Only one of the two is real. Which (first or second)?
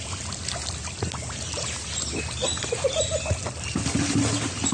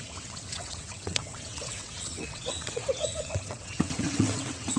first